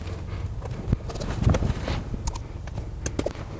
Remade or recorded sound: recorded